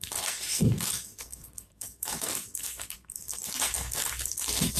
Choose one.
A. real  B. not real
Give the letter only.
B